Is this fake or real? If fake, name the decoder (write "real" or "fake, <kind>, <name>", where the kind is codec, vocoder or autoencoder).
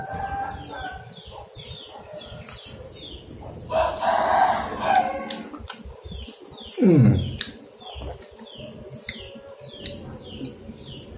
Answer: real